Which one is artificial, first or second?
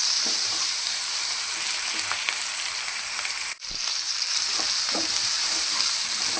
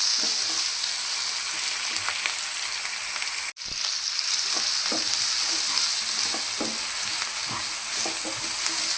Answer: first